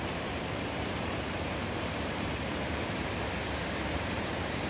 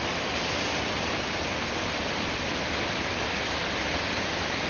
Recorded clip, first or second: second